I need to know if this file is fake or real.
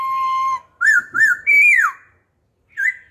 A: real